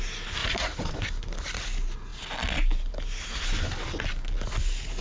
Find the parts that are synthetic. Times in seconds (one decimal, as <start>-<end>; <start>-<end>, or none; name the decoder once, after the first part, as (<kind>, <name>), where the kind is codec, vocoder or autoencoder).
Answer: 0.4-1.0 (vocoder, Vocos)